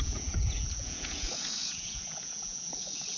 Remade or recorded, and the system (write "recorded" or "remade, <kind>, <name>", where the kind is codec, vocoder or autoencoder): remade, vocoder, Vocos